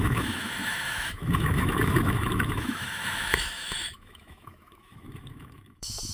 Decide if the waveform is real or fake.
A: fake